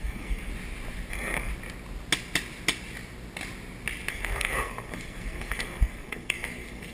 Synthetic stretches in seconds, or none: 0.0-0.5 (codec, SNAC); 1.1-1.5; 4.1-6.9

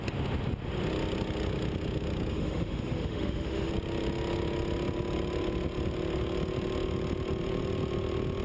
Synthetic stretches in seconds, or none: 2.3-3.7 (autoencoder, DAC-VAE)

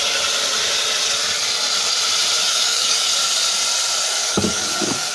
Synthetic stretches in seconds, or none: 2.4-3.1 (codec, DAC); 4.2-5.1

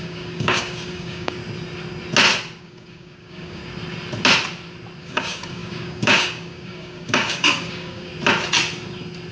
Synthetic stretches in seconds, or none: 0.0-1.4 (codec, DAC); 2.6-3.6; 5.0-8.1

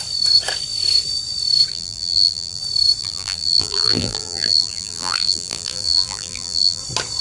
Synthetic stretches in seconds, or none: 1.7-2.6 (vocoder, BigVGAN v2); 3.0-6.8

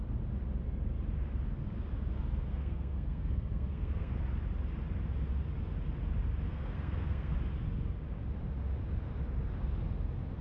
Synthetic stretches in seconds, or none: 2.5-4.1 (codec, SNAC); 6.5-7.3

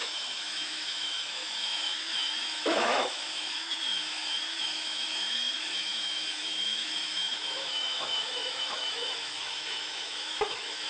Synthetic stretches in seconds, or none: 0.0-10.9 (autoencoder, DAC-VAE)

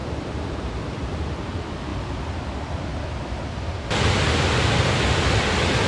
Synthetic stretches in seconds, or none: none